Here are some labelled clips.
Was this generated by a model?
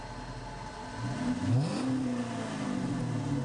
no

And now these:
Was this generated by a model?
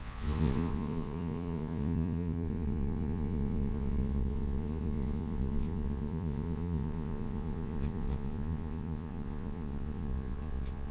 yes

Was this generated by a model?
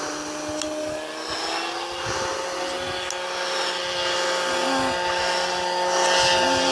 no